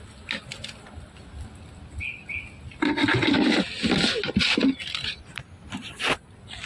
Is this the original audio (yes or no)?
yes